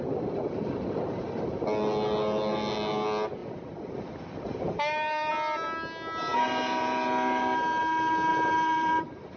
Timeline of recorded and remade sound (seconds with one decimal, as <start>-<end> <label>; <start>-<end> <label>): 0.0-3.4 recorded; 3.4-5.3 remade; 5.3-8.3 recorded; 8.3-8.9 remade; 8.9-9.4 recorded